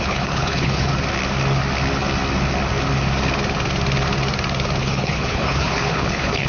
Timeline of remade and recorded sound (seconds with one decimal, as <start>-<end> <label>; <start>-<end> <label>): 0.0-0.9 remade; 0.9-4.8 recorded; 4.8-6.5 remade